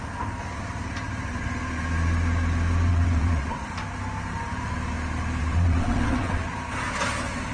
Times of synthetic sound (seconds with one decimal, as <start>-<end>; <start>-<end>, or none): 2.9-3.7; 5.4-6.4